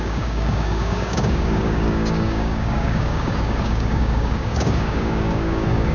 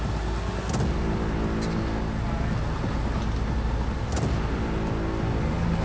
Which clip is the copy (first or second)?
first